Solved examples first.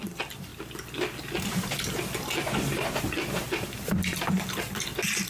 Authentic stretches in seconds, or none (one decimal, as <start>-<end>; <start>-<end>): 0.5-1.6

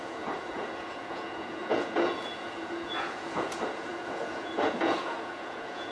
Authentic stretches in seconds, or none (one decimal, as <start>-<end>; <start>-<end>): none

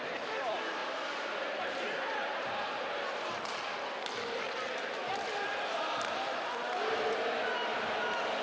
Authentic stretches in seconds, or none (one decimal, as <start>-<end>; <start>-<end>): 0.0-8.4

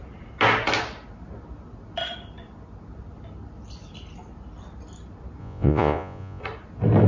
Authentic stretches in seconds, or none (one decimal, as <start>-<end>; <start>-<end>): 0.0-5.4; 6.4-7.1

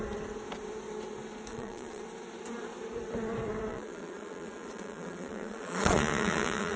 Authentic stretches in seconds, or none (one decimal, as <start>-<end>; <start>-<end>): 0.0-1.5; 2.0-3.7

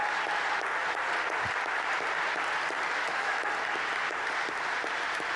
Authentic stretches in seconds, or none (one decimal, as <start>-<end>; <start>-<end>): 0.0-3.0; 3.5-5.4

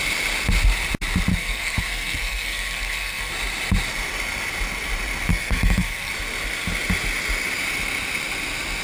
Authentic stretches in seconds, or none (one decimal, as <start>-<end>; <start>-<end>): 0.0-1.3; 3.3-5.3; 6.1-8.8

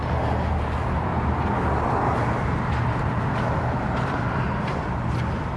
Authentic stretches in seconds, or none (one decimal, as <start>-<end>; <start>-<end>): 0.0-5.6